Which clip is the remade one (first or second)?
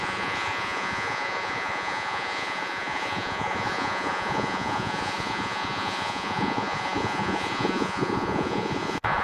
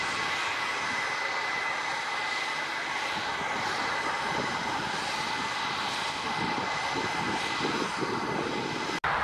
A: first